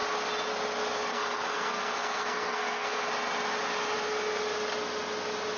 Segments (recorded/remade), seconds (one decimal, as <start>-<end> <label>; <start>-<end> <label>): 0.0-1.1 recorded; 1.1-3.1 remade; 3.1-5.6 recorded